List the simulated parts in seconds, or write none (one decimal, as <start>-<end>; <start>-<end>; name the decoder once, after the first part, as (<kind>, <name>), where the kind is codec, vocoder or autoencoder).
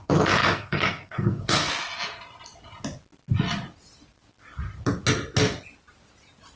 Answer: 0.0-1.7 (codec, SNAC)